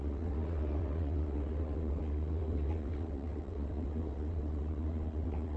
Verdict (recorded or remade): remade